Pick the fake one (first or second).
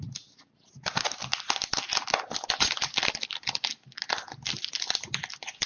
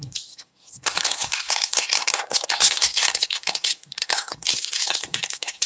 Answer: second